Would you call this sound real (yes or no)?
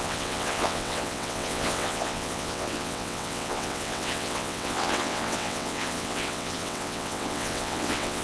no